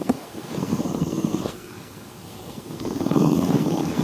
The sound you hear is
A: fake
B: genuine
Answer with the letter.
A